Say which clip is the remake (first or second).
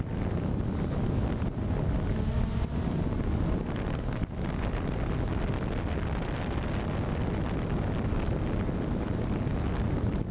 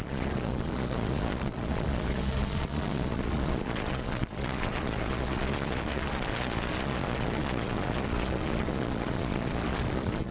second